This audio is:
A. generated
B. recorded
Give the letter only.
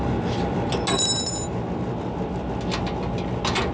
B